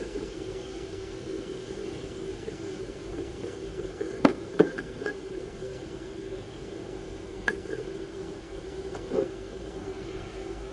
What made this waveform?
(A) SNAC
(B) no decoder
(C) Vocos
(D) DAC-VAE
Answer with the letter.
A